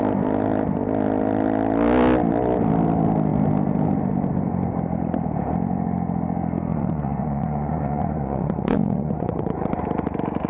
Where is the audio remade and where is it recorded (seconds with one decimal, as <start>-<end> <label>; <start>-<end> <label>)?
0.0-6.7 recorded; 6.7-9.8 remade; 9.8-10.5 recorded